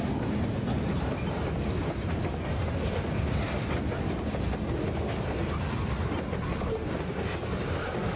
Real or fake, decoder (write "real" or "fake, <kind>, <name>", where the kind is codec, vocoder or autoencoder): real